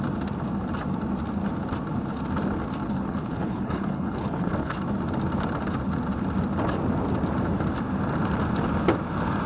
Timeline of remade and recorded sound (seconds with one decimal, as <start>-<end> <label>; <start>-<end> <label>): 0.0-2.8 recorded; 2.8-4.8 remade; 4.8-9.5 recorded